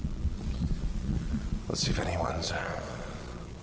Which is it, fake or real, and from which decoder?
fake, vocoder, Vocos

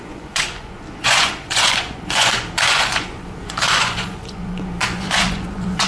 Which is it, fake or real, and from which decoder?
fake, vocoder, Vocos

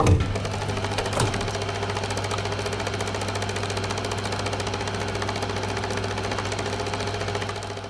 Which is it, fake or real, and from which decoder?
real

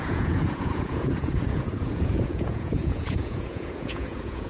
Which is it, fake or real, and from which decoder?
fake, vocoder, Vocos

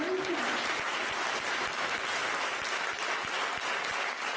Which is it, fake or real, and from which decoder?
real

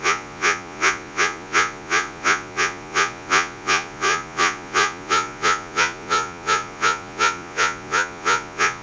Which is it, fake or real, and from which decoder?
fake, vocoder, Vocos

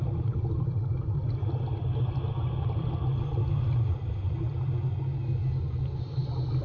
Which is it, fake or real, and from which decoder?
real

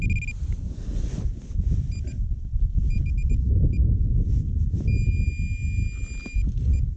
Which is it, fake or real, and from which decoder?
real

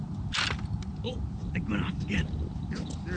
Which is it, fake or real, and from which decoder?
real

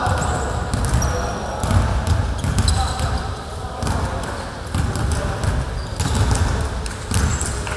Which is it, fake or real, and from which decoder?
real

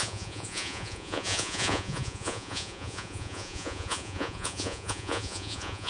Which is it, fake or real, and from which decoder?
fake, vocoder, Vocos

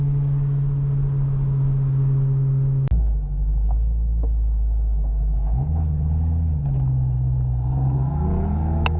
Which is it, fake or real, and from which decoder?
real